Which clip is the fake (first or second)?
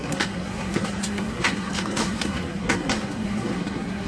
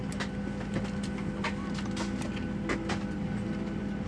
first